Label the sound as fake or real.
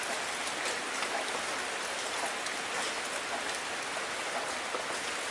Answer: real